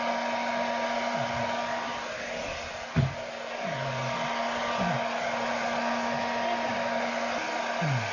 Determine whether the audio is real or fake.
real